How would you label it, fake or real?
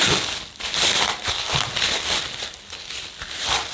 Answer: real